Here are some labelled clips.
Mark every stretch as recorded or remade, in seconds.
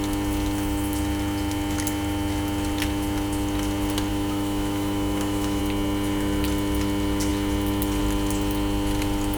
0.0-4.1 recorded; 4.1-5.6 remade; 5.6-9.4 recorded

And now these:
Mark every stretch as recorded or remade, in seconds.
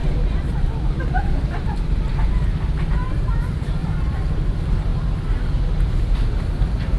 0.0-2.0 remade; 2.0-3.8 recorded; 3.8-4.4 remade; 4.4-7.0 recorded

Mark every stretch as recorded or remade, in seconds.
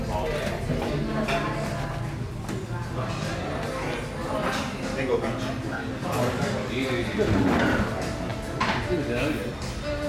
0.0-10.1 recorded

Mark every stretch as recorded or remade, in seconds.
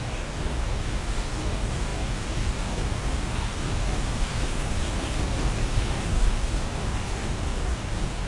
0.0-8.3 remade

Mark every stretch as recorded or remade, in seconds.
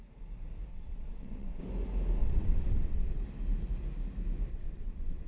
0.0-0.7 recorded; 0.7-1.6 remade; 1.6-2.2 recorded; 2.2-3.2 remade; 3.2-4.5 recorded; 4.5-5.3 remade